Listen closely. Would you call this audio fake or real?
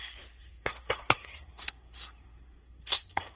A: fake